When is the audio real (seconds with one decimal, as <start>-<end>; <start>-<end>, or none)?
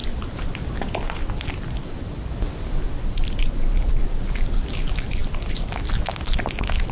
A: 0.0-6.9